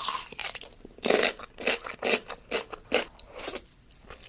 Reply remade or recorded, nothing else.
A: remade